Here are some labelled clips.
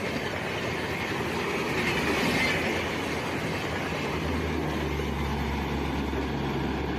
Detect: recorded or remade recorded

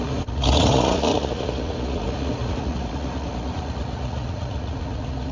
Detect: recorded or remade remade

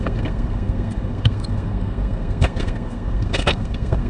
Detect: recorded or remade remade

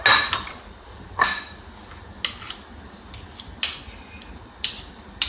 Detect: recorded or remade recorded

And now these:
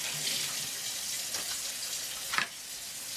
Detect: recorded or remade recorded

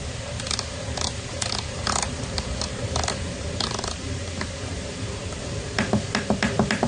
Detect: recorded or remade remade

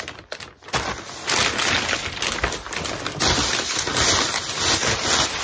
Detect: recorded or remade recorded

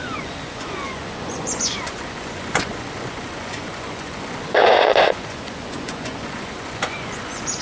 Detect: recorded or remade remade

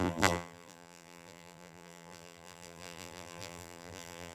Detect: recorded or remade remade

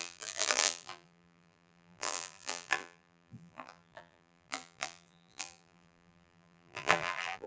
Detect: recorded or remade remade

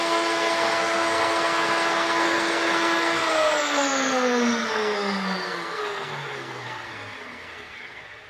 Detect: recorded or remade remade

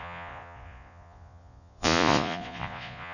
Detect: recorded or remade remade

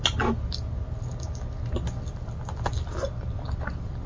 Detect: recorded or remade recorded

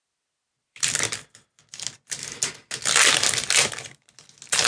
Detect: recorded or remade recorded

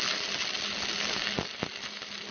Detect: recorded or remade recorded